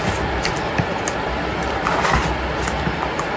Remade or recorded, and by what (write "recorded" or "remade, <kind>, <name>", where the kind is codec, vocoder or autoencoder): recorded